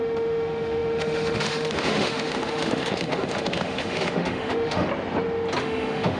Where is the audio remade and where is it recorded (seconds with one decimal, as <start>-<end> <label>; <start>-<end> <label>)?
0.0-4.9 remade; 4.9-5.6 recorded; 5.6-6.2 remade